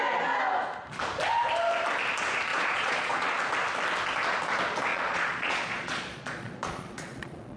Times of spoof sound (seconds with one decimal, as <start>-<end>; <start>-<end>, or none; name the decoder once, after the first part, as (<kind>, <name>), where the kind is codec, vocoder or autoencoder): 2.5-3.3 (vocoder, Vocos); 4.9-7.6